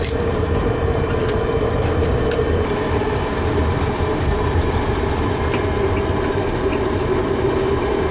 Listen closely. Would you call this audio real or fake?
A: fake